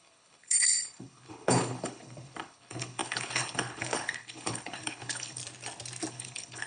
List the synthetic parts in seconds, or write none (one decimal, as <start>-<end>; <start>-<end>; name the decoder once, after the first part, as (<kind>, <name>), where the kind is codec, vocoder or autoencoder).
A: 0.0-5.4 (codec, HILCodec); 6.1-6.7